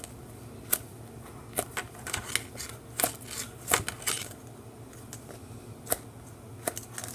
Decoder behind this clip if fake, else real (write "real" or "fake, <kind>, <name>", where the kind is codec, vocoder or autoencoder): real